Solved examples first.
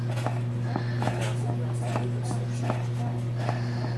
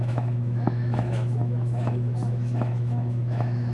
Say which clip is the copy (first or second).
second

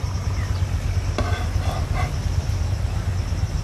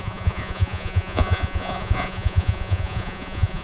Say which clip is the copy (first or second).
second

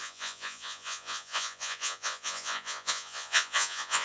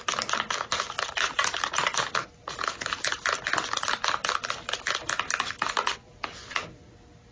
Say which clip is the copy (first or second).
first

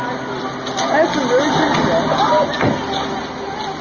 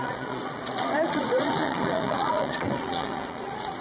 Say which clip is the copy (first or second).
second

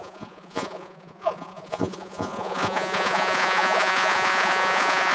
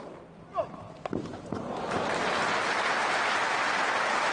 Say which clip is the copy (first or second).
first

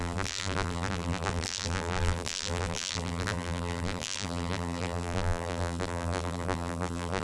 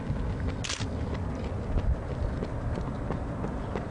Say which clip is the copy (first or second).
first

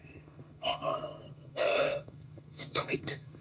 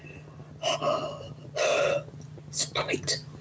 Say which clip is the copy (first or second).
first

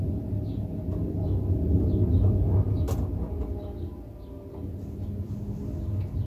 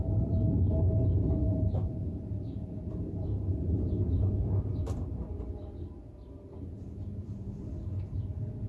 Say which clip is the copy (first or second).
second